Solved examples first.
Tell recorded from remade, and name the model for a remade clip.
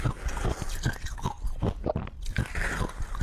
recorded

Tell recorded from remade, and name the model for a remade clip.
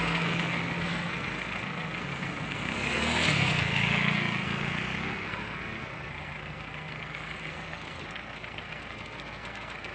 remade, codec, SNAC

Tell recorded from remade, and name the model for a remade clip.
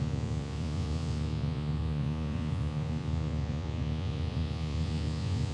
remade, vocoder, Vocos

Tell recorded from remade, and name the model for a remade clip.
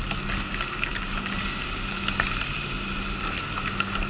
recorded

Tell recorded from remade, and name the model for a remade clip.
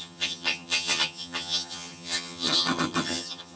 remade, vocoder, HiFi-GAN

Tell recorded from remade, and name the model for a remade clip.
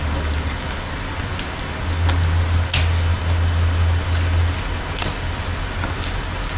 recorded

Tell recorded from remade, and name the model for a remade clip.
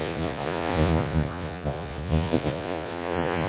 remade, vocoder, Vocos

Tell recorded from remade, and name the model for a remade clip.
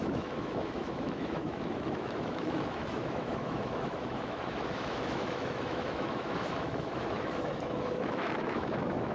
remade, autoencoder, DAC-VAE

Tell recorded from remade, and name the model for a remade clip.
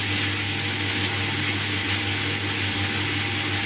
recorded